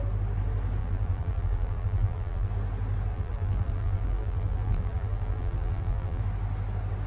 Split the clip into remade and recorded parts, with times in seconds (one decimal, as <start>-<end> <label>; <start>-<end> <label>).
0.0-0.8 recorded; 0.8-2.5 remade; 2.5-3.1 recorded; 3.1-6.2 remade; 6.2-7.1 recorded